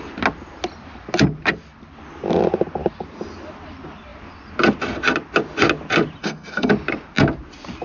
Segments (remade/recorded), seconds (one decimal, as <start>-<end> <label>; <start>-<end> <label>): 0.0-6.2 recorded; 6.2-6.7 remade; 6.7-7.8 recorded